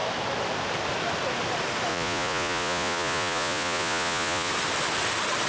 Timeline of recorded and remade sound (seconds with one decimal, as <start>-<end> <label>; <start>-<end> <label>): 0.0-1.9 recorded; 1.9-4.5 remade; 4.5-5.5 recorded